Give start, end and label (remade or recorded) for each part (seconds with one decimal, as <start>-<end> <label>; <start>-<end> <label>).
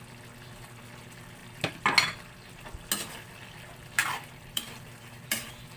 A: 0.0-4.0 recorded; 4.0-5.8 remade